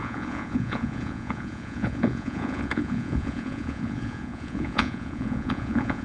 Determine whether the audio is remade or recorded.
remade